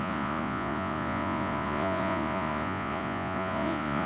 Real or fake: fake